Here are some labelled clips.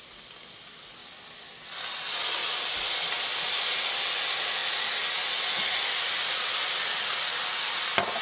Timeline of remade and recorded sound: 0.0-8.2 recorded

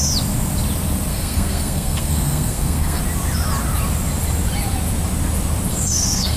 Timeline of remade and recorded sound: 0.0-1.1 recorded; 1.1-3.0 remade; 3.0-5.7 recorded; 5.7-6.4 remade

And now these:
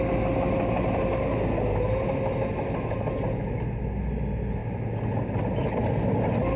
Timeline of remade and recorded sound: 0.0-6.6 recorded

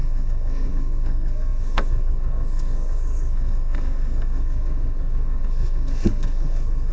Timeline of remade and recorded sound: 0.0-6.9 remade

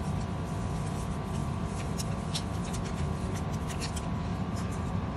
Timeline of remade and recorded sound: 0.0-1.4 recorded; 1.4-2.1 remade; 2.1-4.3 recorded; 4.3-5.2 remade

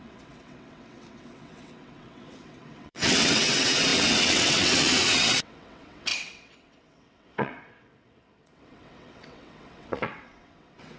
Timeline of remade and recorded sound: 0.0-11.0 remade

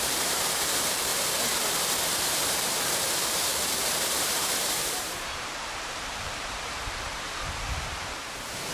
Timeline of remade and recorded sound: 0.0-1.1 remade; 1.1-2.1 recorded; 2.1-8.7 remade